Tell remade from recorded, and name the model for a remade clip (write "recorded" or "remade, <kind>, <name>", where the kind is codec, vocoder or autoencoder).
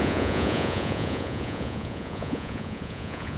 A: remade, vocoder, Vocos